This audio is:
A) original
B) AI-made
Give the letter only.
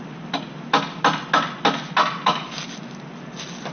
A